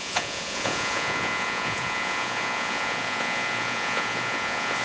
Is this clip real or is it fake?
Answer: fake